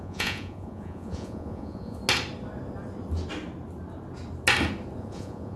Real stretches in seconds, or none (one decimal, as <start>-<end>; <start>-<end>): 2.0-5.0